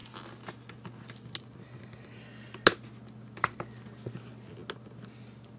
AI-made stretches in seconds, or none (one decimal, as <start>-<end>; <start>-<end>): none